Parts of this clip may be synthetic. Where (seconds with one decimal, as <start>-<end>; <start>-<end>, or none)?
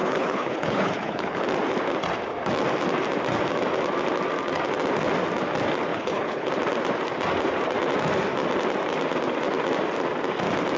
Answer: 0.0-1.4; 5.9-6.5